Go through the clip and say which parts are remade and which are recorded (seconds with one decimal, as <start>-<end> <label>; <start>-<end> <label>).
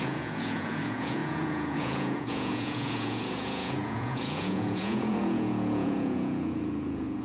0.0-7.2 remade